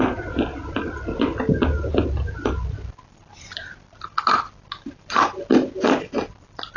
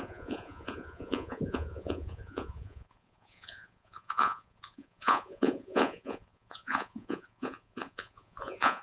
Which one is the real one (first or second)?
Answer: first